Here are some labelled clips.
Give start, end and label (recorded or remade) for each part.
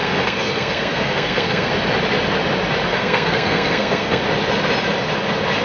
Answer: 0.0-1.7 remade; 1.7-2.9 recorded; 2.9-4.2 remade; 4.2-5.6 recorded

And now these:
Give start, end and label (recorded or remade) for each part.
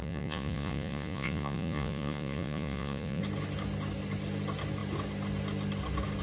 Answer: 0.0-3.2 remade; 3.2-6.2 recorded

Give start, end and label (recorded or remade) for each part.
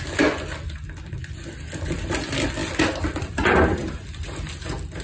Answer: 0.0-5.0 recorded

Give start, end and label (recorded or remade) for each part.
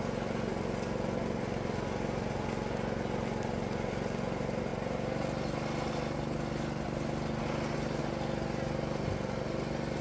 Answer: 0.0-10.0 recorded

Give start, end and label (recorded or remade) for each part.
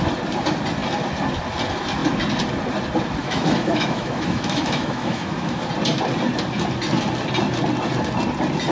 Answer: 0.0-3.2 recorded; 3.2-5.6 remade; 5.6-8.7 recorded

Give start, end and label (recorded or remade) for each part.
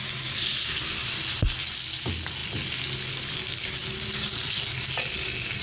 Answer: 0.0-5.6 recorded